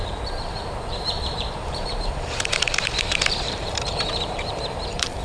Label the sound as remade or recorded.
remade